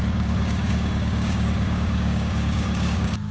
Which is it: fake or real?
fake